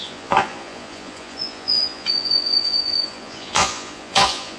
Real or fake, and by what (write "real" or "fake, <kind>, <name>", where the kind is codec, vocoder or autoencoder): fake, vocoder, Vocos